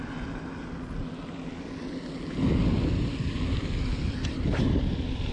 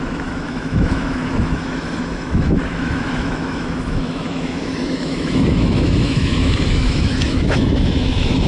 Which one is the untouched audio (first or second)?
first